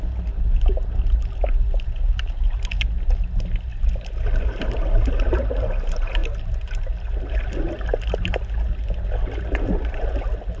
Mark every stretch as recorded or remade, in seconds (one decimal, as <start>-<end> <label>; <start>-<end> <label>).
0.0-10.6 recorded